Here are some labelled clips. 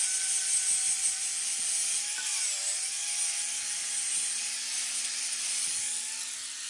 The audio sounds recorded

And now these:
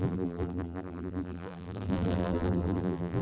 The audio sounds remade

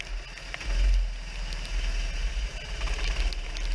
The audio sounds recorded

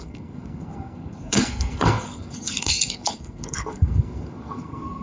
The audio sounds remade